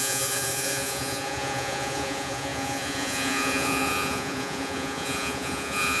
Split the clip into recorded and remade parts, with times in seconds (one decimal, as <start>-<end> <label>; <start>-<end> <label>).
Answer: 0.0-6.0 remade

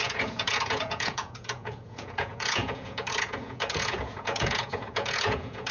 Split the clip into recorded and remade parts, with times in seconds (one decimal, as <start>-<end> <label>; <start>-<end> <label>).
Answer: 0.0-5.7 remade

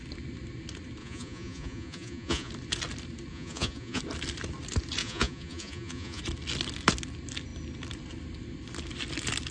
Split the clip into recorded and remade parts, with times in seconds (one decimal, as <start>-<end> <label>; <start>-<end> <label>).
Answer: 0.0-1.0 recorded; 1.0-2.5 remade; 2.5-3.3 recorded; 3.3-4.0 remade; 4.0-5.0 recorded; 5.0-6.2 remade; 6.2-9.5 recorded

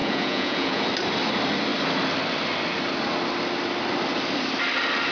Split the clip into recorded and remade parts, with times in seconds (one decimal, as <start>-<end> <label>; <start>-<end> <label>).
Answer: 0.0-0.8 remade; 0.8-5.1 recorded

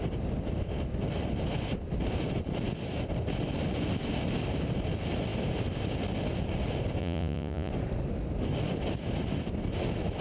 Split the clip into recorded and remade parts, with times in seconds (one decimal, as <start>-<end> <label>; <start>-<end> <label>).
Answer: 0.0-7.0 recorded; 7.0-7.7 remade; 7.7-10.2 recorded